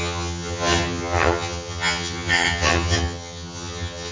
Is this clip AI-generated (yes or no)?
yes